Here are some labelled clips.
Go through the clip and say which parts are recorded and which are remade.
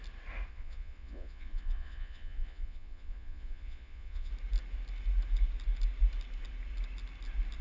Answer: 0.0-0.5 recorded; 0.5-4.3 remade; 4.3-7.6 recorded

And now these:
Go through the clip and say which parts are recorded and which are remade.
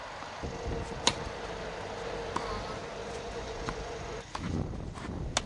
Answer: 0.0-3.0 recorded; 3.0-4.3 remade; 4.3-5.5 recorded